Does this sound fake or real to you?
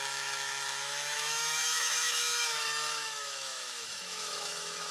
fake